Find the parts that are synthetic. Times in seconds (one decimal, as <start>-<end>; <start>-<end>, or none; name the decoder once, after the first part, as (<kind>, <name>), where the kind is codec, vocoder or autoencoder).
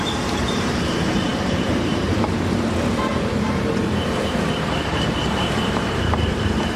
0.0-6.8 (vocoder, BigVGAN v2)